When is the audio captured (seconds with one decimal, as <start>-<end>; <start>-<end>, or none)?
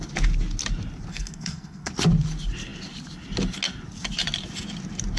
0.0-1.1; 1.9-5.2